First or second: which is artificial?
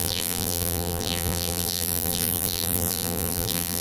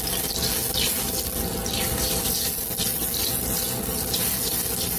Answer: first